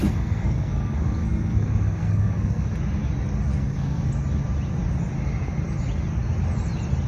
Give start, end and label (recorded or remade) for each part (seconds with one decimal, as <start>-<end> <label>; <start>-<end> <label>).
0.0-2.7 remade; 2.7-3.5 recorded; 3.5-4.1 remade; 4.1-7.1 recorded